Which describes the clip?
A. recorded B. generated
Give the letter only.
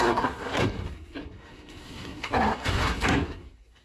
B